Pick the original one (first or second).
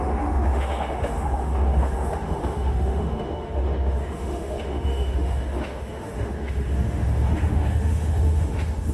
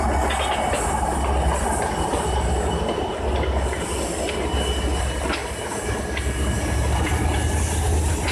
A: second